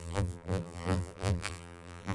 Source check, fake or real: fake